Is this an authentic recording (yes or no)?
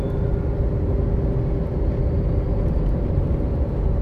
yes